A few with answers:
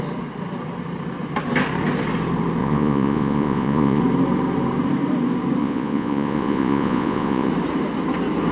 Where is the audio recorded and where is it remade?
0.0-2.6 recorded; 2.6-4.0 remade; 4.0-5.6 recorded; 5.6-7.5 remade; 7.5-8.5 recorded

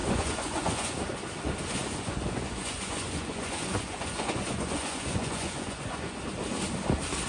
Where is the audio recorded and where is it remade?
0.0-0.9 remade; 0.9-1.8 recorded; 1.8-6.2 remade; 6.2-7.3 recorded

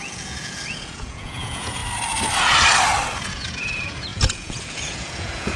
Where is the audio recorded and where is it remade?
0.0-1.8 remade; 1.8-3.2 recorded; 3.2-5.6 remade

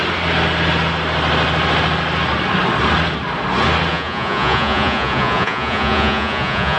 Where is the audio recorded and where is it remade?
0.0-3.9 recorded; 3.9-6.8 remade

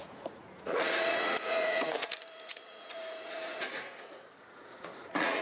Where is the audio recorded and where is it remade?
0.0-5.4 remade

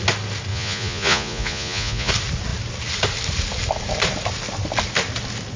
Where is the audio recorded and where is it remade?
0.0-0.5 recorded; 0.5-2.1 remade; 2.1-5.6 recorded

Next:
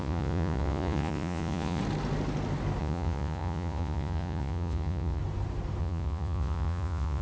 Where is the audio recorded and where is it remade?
0.0-1.8 remade; 1.8-2.8 recorded; 2.8-5.2 remade; 5.2-5.8 recorded; 5.8-7.2 remade